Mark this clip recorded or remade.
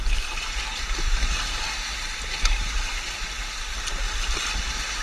remade